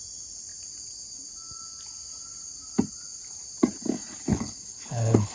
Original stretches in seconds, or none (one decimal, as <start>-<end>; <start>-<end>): 0.0-4.3